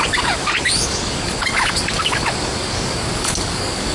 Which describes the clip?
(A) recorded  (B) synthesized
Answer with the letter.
B